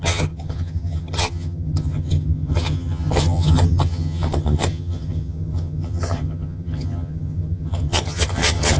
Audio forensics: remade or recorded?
remade